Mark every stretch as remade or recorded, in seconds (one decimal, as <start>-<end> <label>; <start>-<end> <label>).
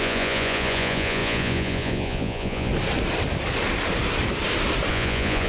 0.0-2.7 remade; 2.7-4.9 recorded; 4.9-5.5 remade